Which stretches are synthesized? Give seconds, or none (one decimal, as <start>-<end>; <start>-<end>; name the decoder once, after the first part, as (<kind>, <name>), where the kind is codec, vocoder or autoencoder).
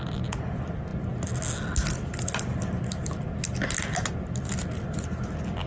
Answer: none